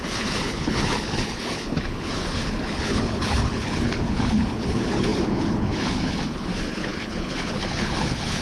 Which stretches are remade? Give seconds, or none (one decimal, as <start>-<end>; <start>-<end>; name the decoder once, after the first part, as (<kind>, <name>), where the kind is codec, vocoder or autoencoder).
0.0-8.4 (codec, HILCodec)